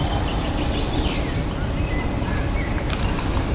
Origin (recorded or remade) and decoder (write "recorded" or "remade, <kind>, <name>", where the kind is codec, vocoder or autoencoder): recorded